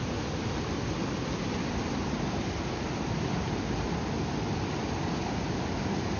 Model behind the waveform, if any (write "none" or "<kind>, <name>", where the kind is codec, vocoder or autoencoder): none